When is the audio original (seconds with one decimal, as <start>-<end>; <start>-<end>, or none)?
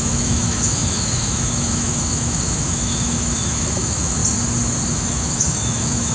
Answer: 4.2-4.9